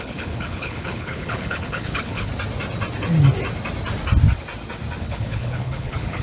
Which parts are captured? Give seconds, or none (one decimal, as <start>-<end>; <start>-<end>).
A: 2.3-5.0